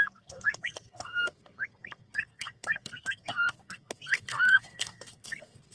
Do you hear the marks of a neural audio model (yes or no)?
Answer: yes